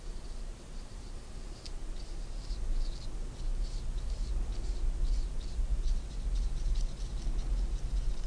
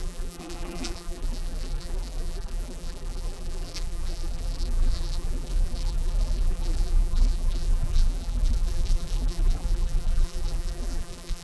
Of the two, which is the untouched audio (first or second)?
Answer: first